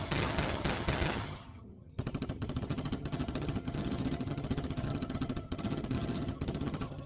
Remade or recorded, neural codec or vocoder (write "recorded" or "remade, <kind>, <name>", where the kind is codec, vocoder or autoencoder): remade, vocoder, HiFi-GAN